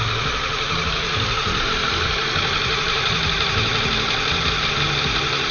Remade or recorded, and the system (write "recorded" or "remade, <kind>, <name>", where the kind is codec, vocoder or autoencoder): recorded